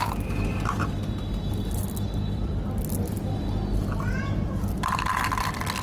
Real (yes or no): yes